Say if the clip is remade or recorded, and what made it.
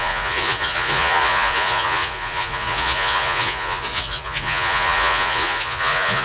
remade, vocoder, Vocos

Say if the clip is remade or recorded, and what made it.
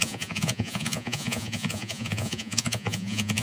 remade, vocoder, Vocos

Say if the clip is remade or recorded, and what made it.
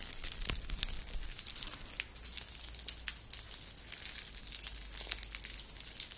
recorded